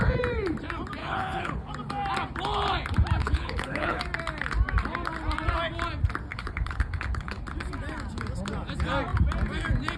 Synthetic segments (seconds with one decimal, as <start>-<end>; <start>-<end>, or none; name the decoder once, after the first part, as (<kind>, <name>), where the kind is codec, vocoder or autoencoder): 1.0-1.7 (codec, HILCodec); 3.2-4.0; 6.3-7.4